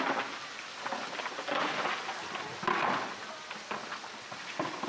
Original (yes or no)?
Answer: yes